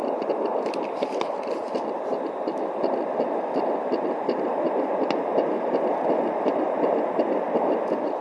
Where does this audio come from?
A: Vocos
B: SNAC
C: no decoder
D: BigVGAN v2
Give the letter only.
C